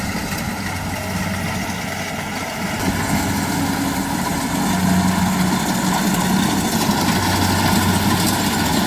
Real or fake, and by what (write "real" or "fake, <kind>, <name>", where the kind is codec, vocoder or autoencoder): real